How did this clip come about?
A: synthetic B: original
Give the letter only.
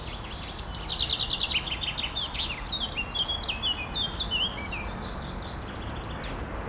B